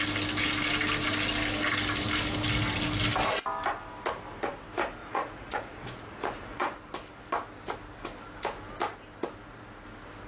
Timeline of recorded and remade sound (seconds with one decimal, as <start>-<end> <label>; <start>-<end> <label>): 0.0-5.0 recorded; 5.0-6.8 remade; 6.8-10.3 recorded